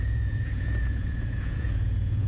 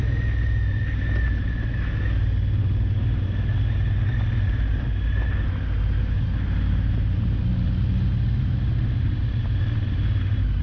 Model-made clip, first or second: first